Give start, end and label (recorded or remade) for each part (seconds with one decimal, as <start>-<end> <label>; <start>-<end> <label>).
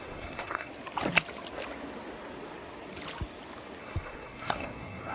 0.0-0.7 remade; 0.7-3.8 recorded; 3.8-5.1 remade